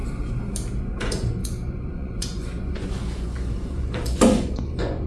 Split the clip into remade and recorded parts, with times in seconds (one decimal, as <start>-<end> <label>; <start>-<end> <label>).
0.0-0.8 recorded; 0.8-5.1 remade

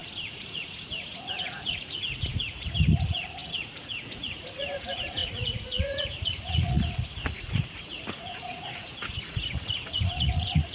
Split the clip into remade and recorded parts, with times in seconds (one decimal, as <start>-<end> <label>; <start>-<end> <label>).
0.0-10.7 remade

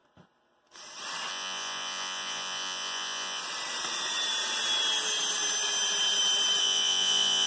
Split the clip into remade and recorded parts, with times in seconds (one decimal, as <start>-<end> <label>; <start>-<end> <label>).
0.0-1.3 recorded; 1.3-3.4 remade; 3.4-6.6 recorded; 6.6-7.5 remade

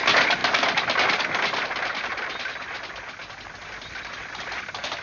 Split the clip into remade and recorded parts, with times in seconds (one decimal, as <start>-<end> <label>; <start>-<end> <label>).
0.0-5.0 recorded